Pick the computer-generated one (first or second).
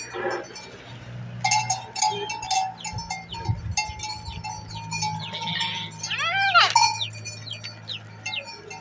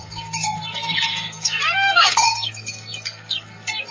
second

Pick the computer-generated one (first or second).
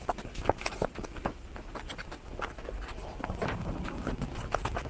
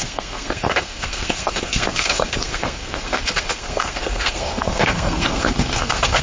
second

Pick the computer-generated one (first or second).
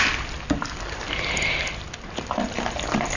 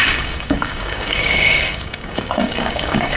second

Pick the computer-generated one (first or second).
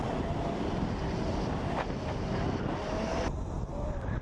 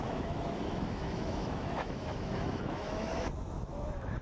second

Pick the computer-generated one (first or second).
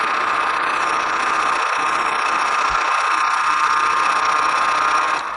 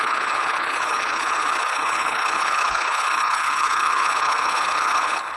second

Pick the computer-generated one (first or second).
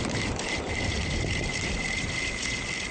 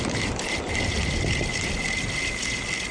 first